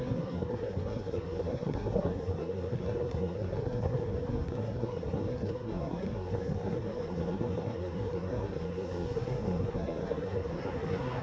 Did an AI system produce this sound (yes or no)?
yes